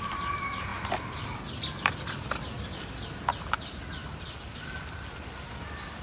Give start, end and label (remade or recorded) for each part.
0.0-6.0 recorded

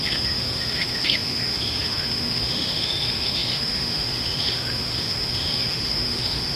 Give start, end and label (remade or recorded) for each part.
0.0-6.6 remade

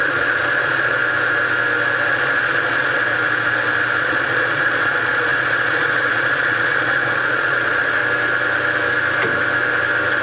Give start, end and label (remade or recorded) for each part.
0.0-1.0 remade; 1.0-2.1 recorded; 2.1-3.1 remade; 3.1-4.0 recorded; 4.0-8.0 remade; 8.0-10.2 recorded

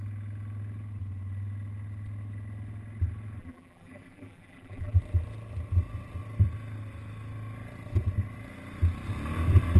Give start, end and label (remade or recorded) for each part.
0.0-3.4 recorded; 3.4-5.0 remade; 5.0-9.8 recorded